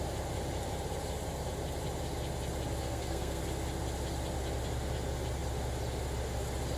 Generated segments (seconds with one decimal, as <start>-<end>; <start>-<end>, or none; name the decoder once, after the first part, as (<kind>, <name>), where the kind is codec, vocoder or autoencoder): 2.8-3.4 (codec, SNAC)